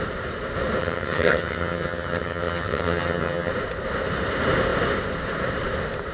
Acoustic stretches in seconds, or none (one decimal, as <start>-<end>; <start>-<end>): 0.0-0.8; 3.5-6.1